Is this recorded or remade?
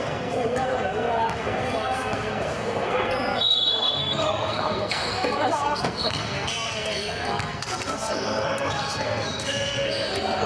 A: remade